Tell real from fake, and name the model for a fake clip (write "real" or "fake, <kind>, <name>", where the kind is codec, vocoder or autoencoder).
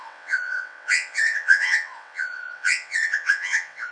fake, vocoder, WaveNeXt